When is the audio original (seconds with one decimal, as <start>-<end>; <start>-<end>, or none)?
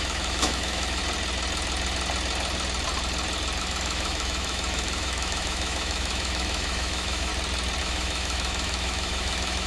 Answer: 1.0-3.6; 7.3-7.8